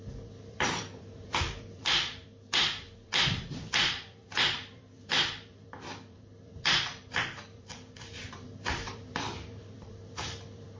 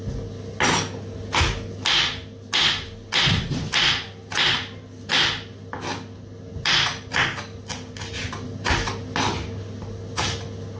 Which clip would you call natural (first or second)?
second